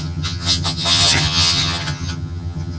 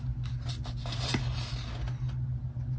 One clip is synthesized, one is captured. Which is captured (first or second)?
second